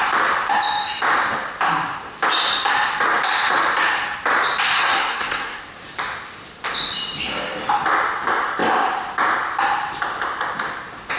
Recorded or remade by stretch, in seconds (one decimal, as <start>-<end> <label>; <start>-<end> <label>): 0.0-4.8 recorded; 4.8-5.6 remade; 5.6-11.2 recorded